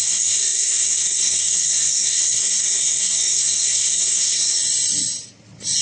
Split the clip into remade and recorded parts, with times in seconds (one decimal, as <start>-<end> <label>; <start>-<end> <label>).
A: 0.0-4.6 remade; 4.6-5.8 recorded